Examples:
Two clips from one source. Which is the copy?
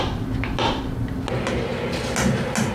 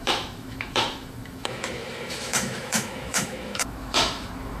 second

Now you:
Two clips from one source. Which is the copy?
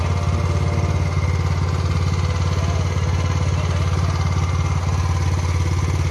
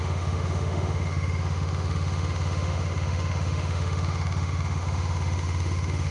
second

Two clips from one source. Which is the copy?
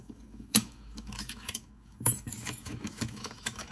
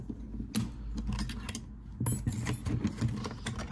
first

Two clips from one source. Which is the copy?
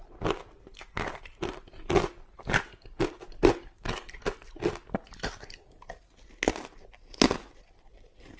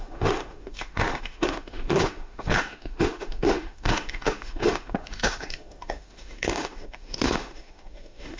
second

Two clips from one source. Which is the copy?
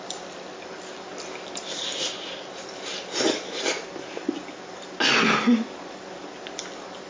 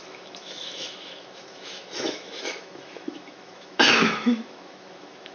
second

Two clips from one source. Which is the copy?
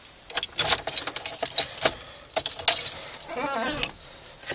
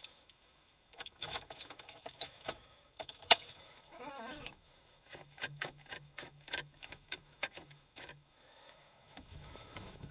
second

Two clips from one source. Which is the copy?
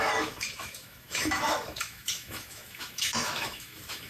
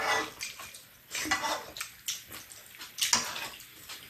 first